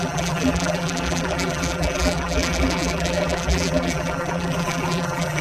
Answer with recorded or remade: remade